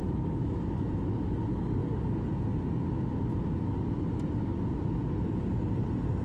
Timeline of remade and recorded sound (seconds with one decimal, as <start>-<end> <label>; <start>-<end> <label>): 0.0-1.3 remade; 1.3-6.2 recorded